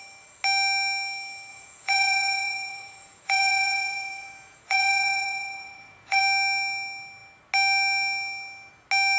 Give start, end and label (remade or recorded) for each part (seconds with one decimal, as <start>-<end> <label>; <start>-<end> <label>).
0.0-1.5 recorded; 1.5-6.2 remade; 6.2-9.2 recorded